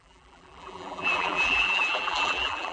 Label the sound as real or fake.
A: fake